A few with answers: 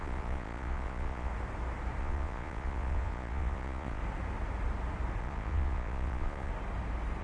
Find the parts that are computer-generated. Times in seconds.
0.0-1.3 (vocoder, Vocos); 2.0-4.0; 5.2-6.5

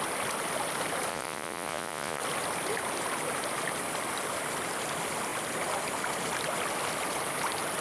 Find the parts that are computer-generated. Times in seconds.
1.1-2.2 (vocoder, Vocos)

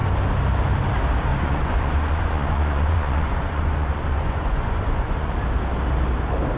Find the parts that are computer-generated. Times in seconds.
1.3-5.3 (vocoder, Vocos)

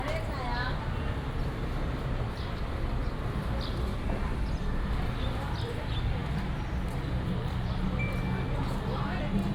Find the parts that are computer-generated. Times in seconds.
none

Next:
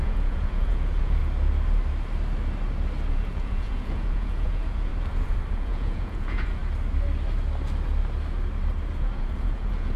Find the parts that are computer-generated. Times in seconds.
0.0-1.2 (vocoder, Vocos); 3.1-4.9; 5.5-6.6; 9.0-10.0

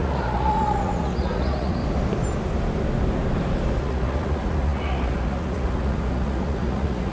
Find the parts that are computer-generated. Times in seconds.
0.0-1.8 (vocoder, Vocos); 3.8-7.1